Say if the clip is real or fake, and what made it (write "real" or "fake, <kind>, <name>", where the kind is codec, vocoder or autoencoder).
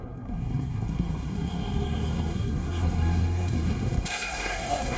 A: fake, codec, SNAC